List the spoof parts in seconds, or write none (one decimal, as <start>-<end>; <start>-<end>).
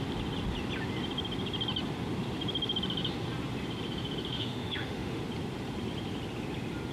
4.3-5.2